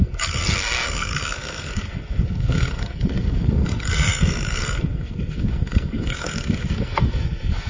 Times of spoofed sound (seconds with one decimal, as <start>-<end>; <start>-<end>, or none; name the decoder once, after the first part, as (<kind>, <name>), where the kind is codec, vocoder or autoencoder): 0.0-7.7 (codec, SNAC)